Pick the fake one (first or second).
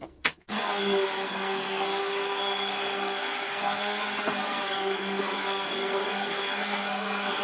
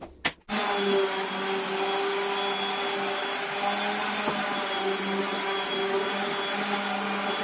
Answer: first